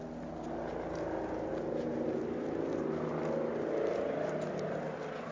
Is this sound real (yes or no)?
yes